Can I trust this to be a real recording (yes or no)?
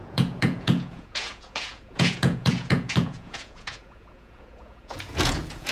no